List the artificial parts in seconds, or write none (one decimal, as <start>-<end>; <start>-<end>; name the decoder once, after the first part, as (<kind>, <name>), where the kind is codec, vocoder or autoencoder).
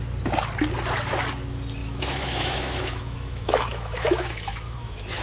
1.8-5.2 (autoencoder, DAC-VAE)